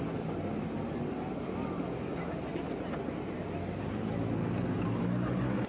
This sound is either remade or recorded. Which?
recorded